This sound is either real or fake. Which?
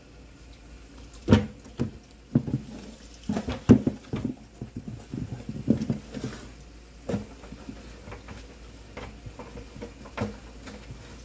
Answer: real